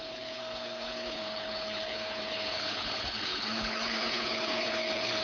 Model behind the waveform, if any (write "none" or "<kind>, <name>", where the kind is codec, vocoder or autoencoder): codec, HILCodec